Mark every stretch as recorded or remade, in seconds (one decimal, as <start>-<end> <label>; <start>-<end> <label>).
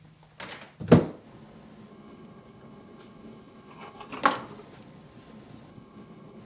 0.0-1.9 recorded; 1.9-4.1 remade; 4.1-5.7 recorded; 5.7-6.4 remade